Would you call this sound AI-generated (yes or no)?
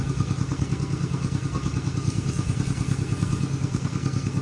yes